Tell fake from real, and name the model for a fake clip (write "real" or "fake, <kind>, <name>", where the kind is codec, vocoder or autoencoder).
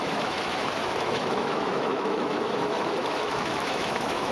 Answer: fake, autoencoder, DAC-VAE